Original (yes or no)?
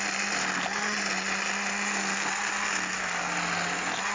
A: yes